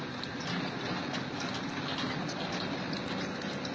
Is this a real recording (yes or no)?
yes